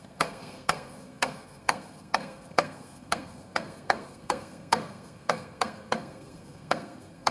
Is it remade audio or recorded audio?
remade